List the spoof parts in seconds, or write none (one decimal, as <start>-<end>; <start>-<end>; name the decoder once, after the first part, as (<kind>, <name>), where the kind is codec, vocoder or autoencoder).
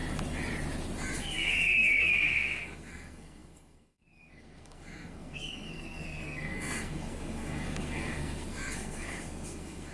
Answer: 1.2-9.9 (codec, SNAC)